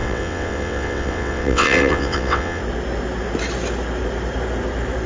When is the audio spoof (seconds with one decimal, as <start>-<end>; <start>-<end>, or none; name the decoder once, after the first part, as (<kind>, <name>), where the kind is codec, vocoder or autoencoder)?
0.0-2.6 (vocoder, WaveNeXt)